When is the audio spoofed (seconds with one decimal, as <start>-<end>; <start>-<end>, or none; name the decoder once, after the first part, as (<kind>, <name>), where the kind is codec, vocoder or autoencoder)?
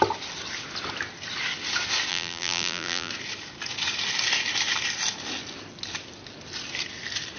2.1-3.1 (vocoder, BigVGAN v2)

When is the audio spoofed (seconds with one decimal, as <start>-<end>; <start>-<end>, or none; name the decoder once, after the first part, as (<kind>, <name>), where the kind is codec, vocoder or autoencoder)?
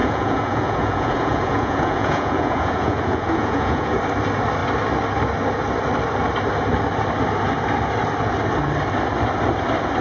0.0-4.0 (vocoder, Vocos)